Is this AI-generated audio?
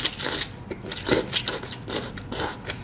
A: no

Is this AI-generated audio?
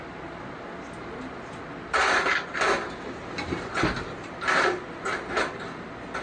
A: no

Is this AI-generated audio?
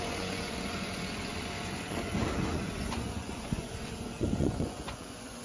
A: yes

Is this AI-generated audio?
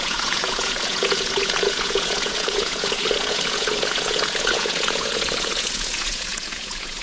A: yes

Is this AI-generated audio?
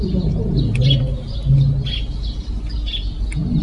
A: no